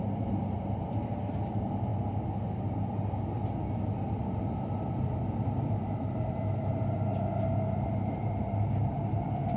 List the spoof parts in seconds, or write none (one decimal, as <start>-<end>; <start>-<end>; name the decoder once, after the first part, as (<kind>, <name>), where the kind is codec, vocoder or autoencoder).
0.0-1.9 (vocoder, BigVGAN v2); 5.0-7.1; 8.7-9.6